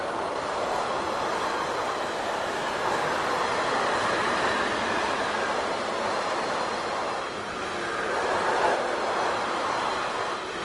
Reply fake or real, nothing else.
real